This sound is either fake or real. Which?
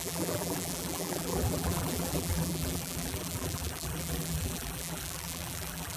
fake